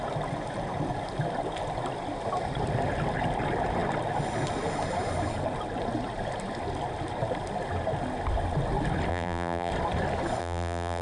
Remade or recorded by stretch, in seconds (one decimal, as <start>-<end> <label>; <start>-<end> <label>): 0.0-9.1 recorded; 9.1-9.7 remade; 9.7-10.4 recorded; 10.4-11.0 remade